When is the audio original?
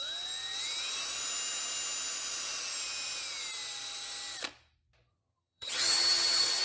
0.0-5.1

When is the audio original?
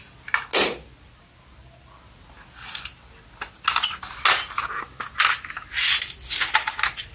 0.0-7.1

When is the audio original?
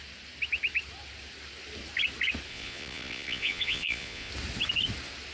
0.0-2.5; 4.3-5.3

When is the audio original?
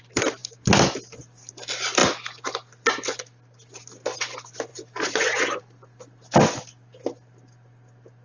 0.0-8.2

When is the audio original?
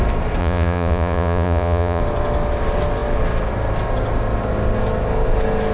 0.0-0.4; 2.0-5.7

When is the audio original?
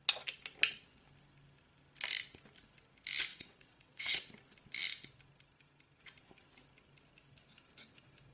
0.0-3.3; 4.3-8.3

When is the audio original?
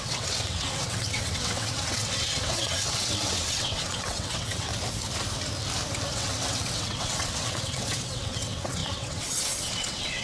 4.7-6.1